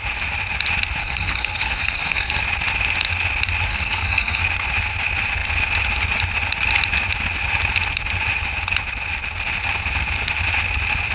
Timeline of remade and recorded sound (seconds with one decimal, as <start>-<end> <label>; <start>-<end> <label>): 0.0-1.0 recorded; 1.0-2.4 remade; 2.4-3.7 recorded; 3.7-4.4 remade; 4.4-11.1 recorded